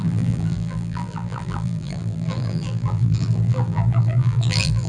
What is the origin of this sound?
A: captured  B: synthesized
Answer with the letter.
B